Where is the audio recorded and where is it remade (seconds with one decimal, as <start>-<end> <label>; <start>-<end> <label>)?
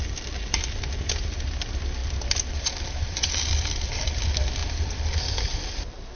0.0-2.0 remade; 2.0-2.5 recorded; 2.5-4.6 remade; 4.6-5.3 recorded; 5.3-6.2 remade